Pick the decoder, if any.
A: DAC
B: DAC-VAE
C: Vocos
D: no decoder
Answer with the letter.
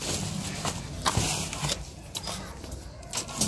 D